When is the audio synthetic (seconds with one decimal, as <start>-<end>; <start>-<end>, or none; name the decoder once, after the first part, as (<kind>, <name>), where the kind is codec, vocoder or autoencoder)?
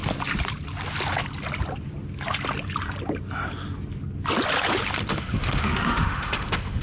5.1-6.8 (autoencoder, DAC-VAE)